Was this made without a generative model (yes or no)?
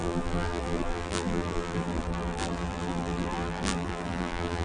no